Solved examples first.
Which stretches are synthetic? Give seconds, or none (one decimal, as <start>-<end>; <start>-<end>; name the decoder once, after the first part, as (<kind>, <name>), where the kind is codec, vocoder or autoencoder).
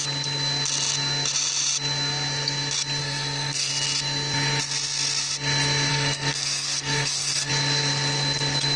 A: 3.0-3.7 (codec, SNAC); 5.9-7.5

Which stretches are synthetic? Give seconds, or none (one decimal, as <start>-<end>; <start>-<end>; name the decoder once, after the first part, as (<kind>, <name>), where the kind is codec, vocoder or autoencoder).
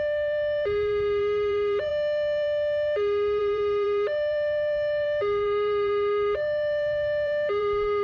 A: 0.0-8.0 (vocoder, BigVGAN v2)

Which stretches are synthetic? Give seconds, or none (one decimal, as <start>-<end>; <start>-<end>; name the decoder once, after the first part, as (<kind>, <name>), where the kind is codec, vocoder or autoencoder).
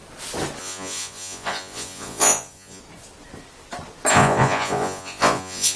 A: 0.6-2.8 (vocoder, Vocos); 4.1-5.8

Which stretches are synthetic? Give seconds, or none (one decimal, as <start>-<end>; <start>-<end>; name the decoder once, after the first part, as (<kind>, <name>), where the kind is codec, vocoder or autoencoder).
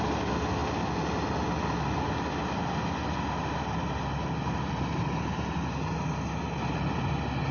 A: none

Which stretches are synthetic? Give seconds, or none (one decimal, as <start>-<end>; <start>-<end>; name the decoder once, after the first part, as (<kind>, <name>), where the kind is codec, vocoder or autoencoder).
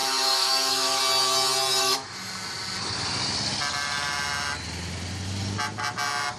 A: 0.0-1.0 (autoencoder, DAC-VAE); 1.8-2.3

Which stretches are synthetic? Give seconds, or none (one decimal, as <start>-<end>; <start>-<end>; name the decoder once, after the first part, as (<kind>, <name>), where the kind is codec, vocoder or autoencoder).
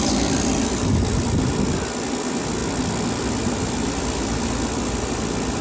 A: 2.6-3.3 (vocoder, BigVGAN v2)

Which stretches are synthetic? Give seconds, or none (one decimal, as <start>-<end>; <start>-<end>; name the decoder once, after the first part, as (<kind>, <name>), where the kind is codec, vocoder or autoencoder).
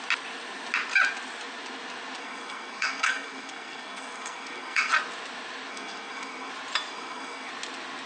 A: 2.2-4.9 (codec, SNAC); 5.7-6.5; 6.9-7.5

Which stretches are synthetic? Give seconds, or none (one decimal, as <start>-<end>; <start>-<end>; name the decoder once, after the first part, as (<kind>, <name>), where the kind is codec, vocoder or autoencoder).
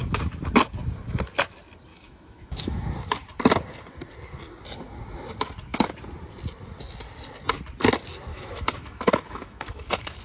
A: 1.9-2.9 (autoencoder, DAC-VAE); 8.3-10.2